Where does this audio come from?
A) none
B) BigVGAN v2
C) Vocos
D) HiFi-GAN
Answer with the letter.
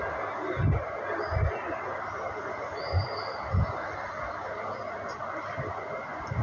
A